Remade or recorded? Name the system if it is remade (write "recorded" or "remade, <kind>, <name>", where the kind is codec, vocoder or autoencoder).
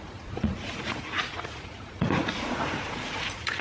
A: remade, vocoder, Vocos